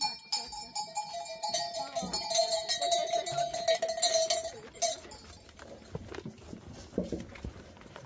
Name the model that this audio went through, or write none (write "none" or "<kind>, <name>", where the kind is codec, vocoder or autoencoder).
none